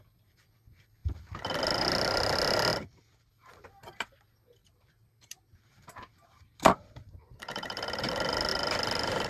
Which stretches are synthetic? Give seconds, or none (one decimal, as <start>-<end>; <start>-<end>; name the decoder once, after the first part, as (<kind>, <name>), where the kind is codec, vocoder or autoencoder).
2.7-3.3 (vocoder, BigVGAN v2); 4.6-8.1